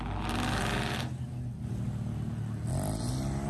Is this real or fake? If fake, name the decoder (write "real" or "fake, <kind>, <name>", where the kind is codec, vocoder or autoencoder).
real